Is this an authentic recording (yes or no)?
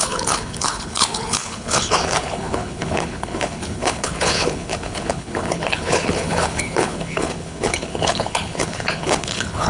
no